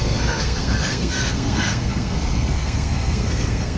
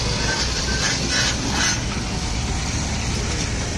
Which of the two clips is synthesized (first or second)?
first